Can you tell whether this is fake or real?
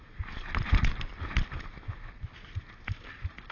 real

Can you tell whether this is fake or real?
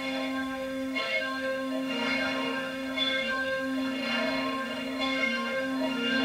fake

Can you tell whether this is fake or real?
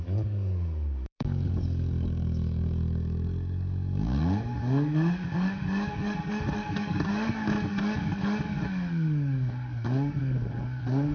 fake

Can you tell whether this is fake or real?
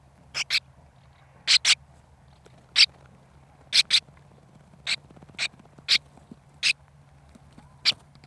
real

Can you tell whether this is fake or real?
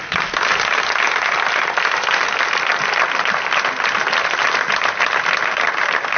real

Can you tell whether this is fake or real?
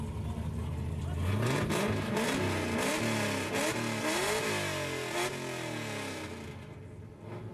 real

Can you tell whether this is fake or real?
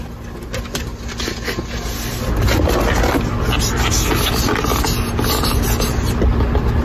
real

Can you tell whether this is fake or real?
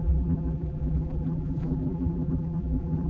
fake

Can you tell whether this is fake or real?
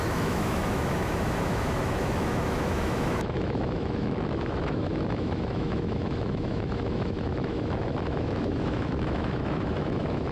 fake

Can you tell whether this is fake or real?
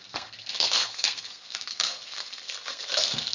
fake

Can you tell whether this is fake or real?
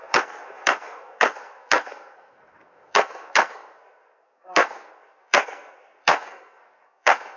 fake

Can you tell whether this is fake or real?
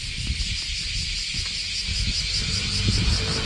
real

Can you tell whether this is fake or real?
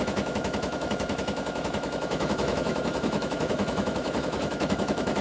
fake